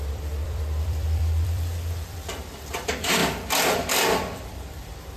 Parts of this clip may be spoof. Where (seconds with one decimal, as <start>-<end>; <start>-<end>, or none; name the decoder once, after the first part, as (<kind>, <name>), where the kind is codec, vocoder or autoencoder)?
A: 0.0-3.2 (vocoder, BigVGAN v2); 3.7-5.2